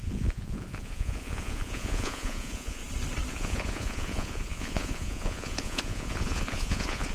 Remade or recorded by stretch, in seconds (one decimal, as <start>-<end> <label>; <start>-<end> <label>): 0.0-2.8 remade; 2.8-3.3 recorded; 3.3-7.1 remade